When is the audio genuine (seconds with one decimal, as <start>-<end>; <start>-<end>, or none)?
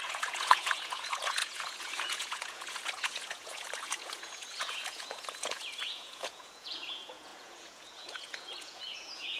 none